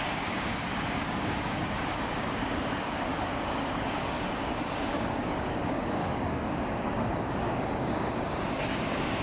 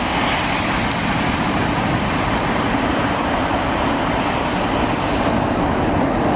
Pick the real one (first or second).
second